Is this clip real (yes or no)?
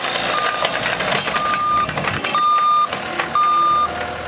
yes